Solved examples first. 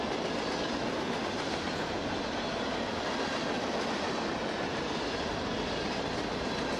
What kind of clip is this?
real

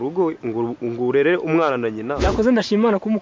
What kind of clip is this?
real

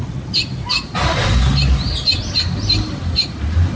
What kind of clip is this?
real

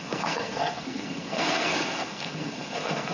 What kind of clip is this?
fake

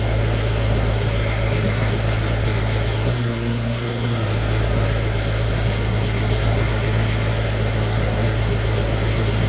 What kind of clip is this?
fake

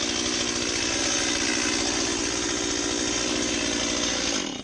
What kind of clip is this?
real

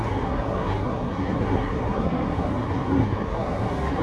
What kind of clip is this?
fake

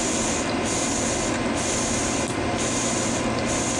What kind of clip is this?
real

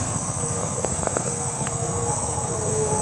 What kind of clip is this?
fake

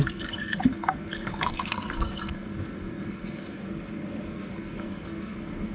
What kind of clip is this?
fake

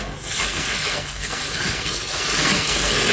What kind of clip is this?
fake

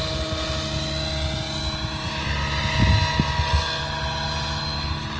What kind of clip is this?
real